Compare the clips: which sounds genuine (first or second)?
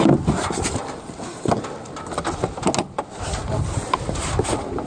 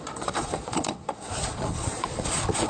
first